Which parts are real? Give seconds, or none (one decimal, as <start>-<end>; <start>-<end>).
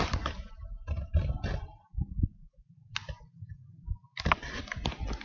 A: 3.1-3.6; 4.6-5.2